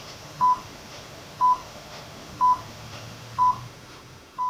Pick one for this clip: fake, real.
fake